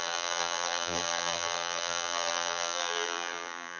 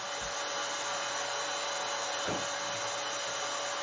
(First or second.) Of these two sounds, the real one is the second